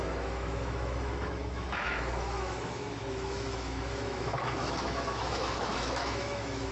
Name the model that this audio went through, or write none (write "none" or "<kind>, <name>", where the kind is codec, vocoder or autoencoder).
autoencoder, DAC-VAE